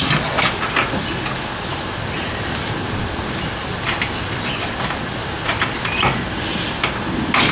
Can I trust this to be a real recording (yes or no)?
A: yes